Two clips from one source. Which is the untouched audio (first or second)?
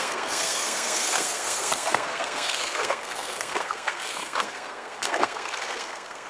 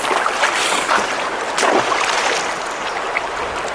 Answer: second